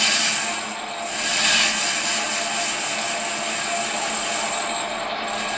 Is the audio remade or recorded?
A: recorded